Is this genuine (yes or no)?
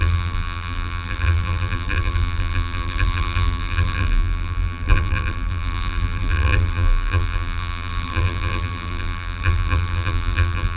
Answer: no